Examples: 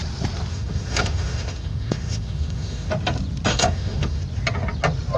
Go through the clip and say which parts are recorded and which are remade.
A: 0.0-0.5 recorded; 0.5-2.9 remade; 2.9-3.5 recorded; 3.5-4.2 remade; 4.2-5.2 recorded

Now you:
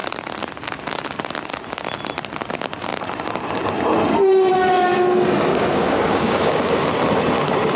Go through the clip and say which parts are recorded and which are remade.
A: 0.0-5.5 recorded; 5.5-6.9 remade; 6.9-7.8 recorded

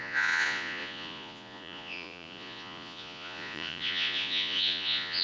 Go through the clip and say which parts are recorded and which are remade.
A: 0.0-5.2 remade

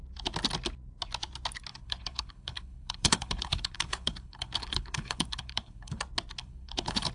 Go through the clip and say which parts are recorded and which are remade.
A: 0.0-1.7 recorded; 1.7-6.0 remade; 6.0-6.4 recorded; 6.4-7.1 remade